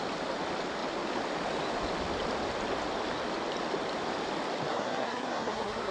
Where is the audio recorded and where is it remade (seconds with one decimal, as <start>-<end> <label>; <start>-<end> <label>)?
0.0-4.7 recorded; 4.7-5.9 remade